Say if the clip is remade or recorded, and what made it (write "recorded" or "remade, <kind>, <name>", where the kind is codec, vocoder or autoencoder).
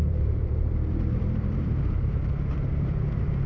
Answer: remade, vocoder, BigVGAN v2